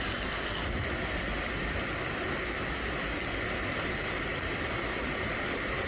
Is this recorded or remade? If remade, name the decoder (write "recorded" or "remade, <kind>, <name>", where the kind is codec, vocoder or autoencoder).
recorded